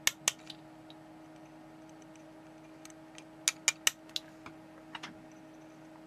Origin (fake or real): real